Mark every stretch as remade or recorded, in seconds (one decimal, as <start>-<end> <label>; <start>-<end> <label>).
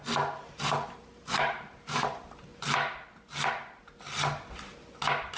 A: 0.0-0.5 recorded; 0.5-2.5 remade; 2.5-5.4 recorded